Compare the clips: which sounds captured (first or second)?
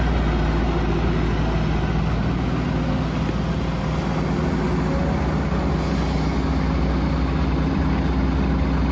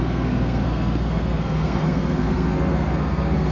first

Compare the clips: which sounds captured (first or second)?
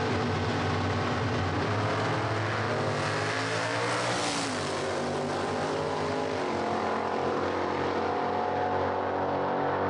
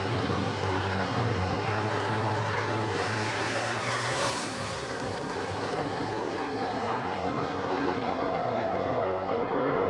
first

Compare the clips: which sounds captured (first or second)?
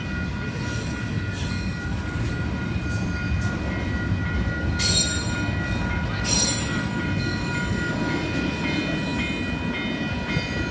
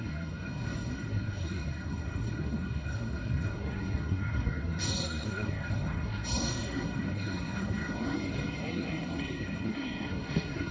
first